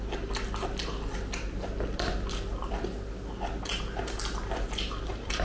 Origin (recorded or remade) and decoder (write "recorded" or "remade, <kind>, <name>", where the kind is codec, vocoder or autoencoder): recorded